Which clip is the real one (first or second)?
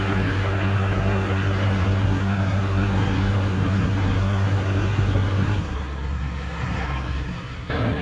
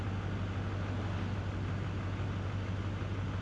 second